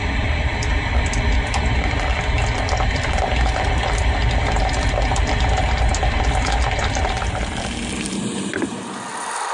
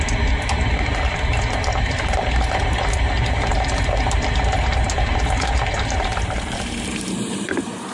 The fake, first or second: second